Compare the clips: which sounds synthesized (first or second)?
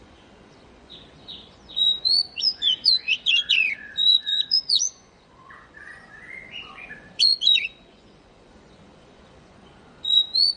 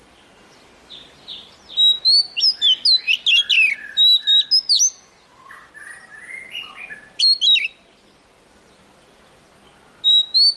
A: first